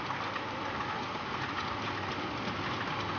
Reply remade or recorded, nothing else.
recorded